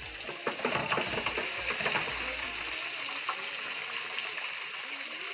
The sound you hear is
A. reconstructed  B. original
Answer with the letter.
B